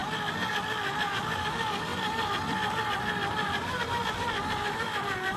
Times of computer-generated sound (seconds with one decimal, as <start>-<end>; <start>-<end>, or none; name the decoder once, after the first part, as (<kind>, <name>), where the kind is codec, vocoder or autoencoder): none